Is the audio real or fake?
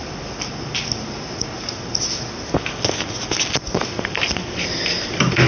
real